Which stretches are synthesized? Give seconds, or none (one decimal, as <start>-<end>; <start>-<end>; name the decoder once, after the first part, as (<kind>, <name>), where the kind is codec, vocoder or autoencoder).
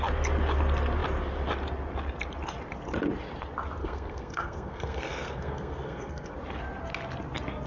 3.8-6.3 (codec, SNAC)